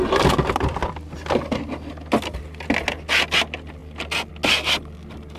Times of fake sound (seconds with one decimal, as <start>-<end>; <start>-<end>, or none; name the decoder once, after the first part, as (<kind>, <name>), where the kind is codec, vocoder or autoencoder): none